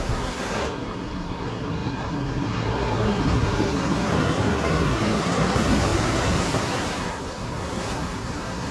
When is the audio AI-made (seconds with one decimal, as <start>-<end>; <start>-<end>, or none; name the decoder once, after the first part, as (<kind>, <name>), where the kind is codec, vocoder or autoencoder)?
0.0-8.7 (codec, SNAC)